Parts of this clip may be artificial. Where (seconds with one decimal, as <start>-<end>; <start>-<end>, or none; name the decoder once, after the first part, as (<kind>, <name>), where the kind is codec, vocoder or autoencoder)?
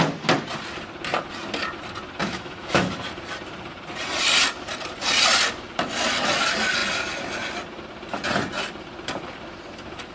2.2-2.9 (autoencoder, DAC-VAE)